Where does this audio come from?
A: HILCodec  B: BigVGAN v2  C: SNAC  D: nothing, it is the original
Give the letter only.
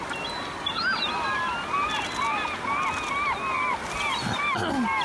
D